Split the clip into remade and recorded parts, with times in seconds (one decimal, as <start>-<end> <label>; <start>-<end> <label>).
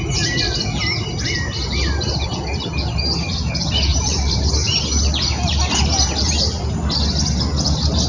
0.0-3.9 recorded; 3.9-4.5 remade; 4.5-8.1 recorded